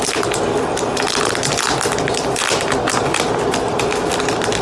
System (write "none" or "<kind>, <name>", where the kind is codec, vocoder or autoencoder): none